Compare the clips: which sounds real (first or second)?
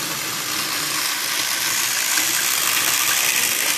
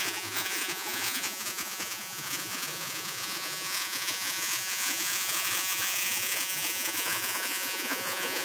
first